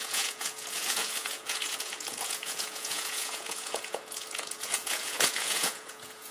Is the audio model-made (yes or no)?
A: yes